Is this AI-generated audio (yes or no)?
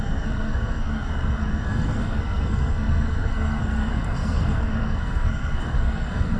yes